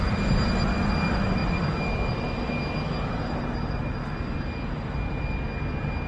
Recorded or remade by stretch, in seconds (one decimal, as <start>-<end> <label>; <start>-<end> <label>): 0.0-6.1 recorded